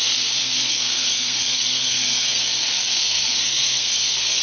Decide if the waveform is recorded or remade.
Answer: remade